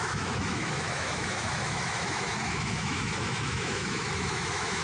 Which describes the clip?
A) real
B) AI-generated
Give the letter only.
B